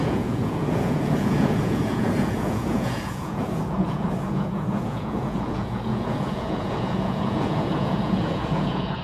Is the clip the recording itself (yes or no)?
no